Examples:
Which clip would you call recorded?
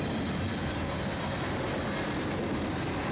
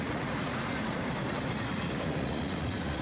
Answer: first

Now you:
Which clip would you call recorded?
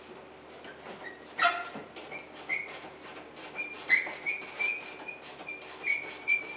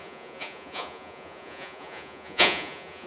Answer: first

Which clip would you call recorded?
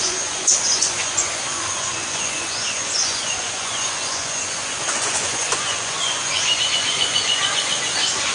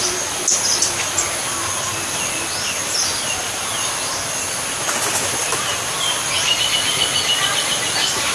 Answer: second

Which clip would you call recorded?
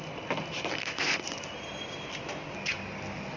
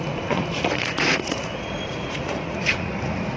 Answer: first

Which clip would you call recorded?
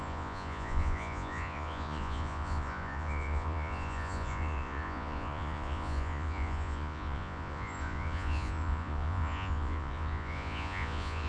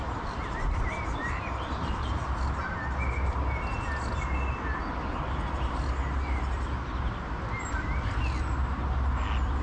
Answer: second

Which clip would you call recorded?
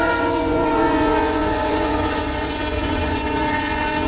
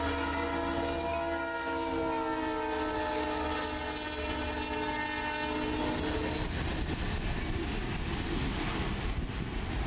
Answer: second